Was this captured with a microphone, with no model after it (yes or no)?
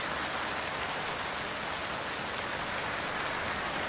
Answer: yes